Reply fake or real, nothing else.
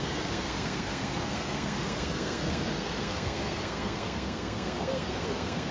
fake